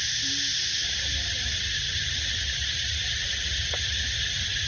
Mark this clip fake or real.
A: real